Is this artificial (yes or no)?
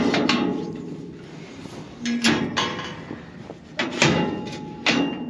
no